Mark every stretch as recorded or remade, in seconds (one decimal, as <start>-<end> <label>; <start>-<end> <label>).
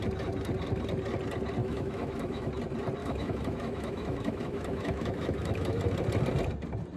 0.0-1.6 recorded; 1.6-2.5 remade; 2.5-3.0 recorded; 3.0-5.8 remade; 5.8-7.0 recorded